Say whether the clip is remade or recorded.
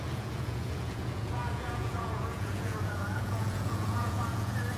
remade